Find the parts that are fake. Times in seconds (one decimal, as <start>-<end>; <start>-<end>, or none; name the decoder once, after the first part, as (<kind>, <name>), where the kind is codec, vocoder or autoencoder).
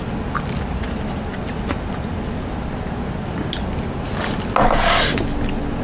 none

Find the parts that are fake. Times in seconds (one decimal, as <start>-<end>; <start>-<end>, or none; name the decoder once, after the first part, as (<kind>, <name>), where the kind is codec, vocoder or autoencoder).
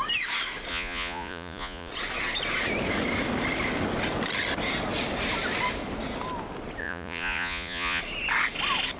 0.7-1.9 (vocoder, Vocos); 6.8-8.0